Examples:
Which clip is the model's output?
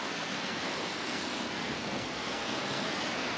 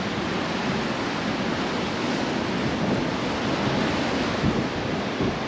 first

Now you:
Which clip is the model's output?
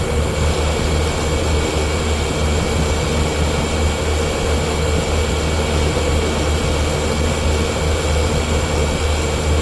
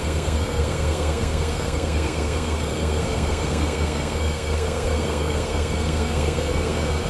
second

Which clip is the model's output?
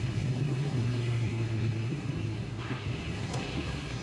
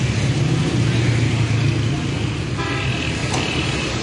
first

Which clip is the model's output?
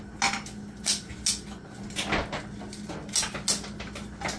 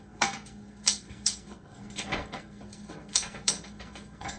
second